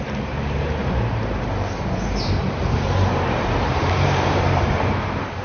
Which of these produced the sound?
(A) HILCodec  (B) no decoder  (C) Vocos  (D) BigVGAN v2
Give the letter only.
D